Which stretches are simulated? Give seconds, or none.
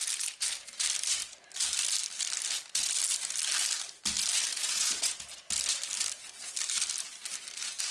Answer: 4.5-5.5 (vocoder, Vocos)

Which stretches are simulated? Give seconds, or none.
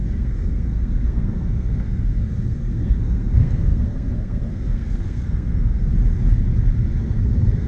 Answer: 0.0-5.9 (codec, SNAC); 7.0-7.7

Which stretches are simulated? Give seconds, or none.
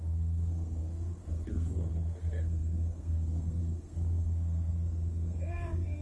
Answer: 0.0-6.0 (codec, SNAC)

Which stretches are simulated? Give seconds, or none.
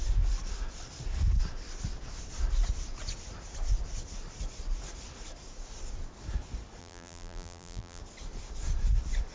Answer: 6.8-8.0 (vocoder, BigVGAN v2)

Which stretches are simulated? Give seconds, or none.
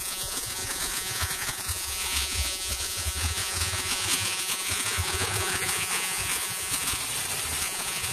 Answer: 0.0-7.0 (vocoder, Vocos); 7.6-8.1